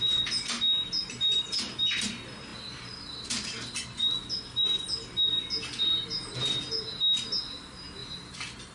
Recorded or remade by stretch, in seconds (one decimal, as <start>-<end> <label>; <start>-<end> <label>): 0.0-8.0 recorded; 8.0-8.7 remade